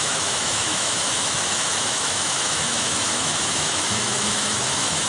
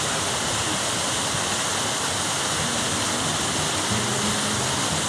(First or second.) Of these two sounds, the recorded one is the second